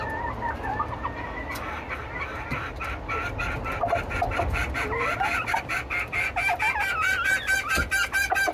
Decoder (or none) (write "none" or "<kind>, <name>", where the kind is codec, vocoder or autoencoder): none